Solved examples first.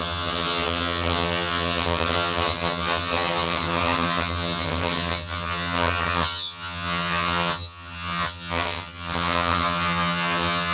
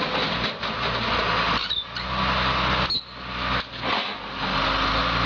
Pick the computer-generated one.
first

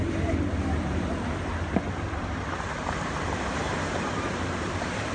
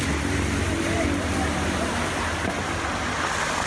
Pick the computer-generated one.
first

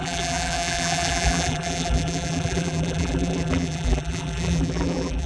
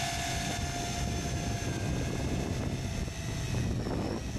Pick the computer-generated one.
first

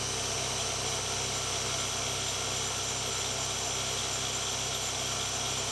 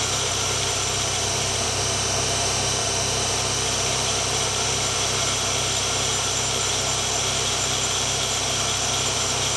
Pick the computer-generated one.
second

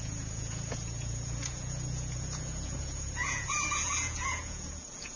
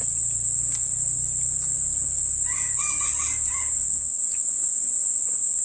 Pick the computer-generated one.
first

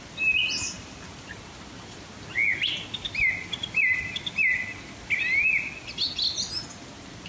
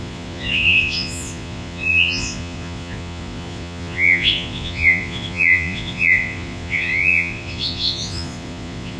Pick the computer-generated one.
second